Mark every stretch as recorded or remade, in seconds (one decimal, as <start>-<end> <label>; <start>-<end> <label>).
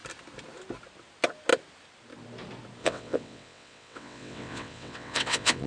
0.0-2.8 recorded; 2.8-5.7 remade